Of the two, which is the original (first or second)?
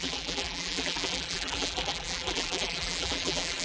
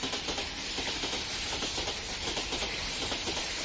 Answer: second